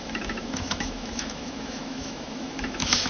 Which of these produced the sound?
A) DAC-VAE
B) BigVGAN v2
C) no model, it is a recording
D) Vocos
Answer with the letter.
A